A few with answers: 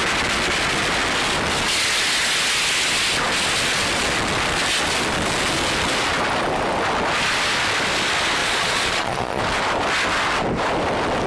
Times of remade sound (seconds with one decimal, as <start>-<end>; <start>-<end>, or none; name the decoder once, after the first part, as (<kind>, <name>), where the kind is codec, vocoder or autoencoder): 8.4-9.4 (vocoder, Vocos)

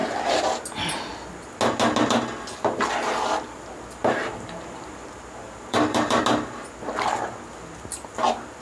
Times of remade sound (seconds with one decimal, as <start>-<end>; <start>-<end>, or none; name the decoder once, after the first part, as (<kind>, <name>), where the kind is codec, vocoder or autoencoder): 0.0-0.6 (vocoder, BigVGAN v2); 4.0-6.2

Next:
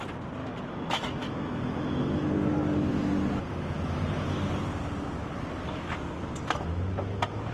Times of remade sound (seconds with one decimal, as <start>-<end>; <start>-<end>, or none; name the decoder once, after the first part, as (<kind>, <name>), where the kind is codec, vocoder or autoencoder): 0.4-1.6 (autoencoder, DAC-VAE)

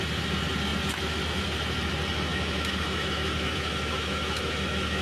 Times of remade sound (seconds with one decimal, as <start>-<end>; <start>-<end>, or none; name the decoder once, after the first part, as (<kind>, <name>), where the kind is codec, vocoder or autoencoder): 2.3-5.0 (autoencoder, DAC-VAE)

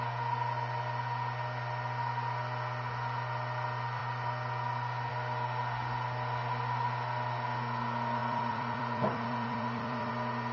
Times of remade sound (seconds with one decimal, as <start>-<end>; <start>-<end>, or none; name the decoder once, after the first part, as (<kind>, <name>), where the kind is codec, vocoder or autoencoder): 8.2-10.1 (vocoder, BigVGAN v2)